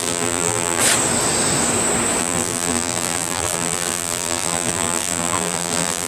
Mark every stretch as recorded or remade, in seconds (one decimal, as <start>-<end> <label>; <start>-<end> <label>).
0.0-0.8 remade; 0.8-2.2 recorded; 2.2-6.1 remade